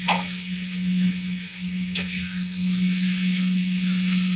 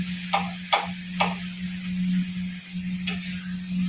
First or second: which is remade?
first